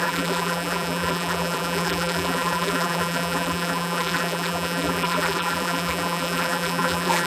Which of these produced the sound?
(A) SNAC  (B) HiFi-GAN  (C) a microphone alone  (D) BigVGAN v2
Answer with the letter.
D